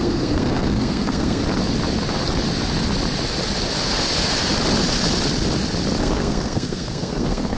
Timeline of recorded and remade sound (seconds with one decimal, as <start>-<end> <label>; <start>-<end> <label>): 0.0-1.4 remade; 1.4-6.0 recorded; 6.0-7.6 remade